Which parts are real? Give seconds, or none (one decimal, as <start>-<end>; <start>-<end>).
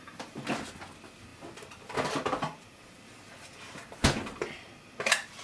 0.0-5.4